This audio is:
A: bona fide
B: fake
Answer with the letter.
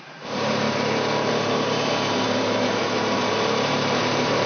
B